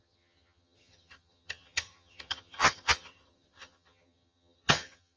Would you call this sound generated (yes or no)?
yes